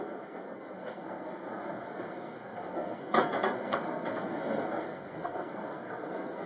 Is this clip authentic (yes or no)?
no